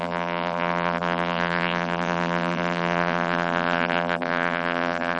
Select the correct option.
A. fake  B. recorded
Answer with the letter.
A